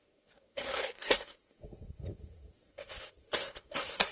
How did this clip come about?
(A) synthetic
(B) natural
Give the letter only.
A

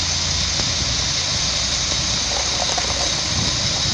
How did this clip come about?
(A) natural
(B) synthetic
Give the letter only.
A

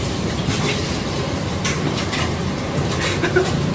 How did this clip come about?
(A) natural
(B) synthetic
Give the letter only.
B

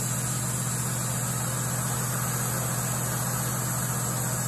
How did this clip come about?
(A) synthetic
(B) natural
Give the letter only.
B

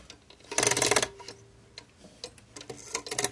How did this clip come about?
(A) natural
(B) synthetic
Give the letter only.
A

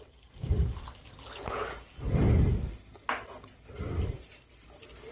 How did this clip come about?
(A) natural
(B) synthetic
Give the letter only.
A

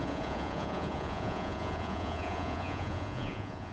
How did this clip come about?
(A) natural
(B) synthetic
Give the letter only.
B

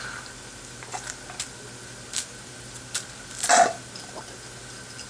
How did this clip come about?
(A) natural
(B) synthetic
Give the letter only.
B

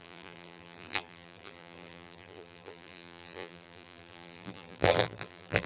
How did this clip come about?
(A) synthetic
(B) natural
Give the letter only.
A